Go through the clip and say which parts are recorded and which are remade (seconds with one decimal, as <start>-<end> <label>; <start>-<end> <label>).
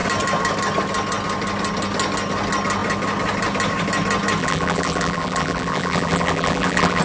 0.0-4.4 recorded; 4.4-7.0 remade